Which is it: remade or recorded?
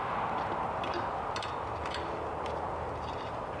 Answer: recorded